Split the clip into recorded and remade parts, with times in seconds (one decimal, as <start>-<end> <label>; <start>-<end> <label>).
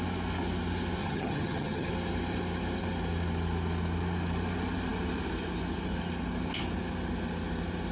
0.0-1.0 recorded; 1.0-1.9 remade; 1.9-7.9 recorded